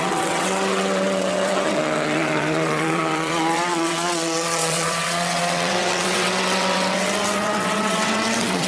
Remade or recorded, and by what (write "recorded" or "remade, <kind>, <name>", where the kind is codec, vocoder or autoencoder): remade, vocoder, WaveNeXt